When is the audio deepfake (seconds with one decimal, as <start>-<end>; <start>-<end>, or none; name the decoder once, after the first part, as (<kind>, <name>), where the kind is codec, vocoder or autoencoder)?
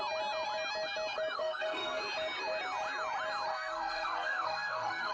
1.4-2.0 (codec, SNAC); 3.5-5.1